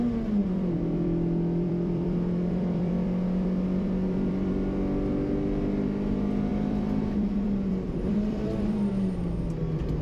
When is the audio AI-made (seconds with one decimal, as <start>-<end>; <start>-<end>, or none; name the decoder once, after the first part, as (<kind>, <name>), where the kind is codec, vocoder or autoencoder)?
0.4-4.5 (vocoder, BigVGAN v2); 6.5-8.9

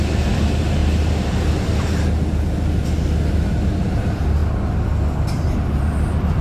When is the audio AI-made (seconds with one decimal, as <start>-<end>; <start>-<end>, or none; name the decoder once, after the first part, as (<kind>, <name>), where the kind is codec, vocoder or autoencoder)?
none

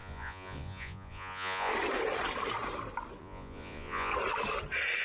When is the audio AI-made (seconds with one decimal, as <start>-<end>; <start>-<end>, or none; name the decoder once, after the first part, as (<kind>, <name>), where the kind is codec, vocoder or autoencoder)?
0.0-1.7 (vocoder, Vocos); 3.2-4.1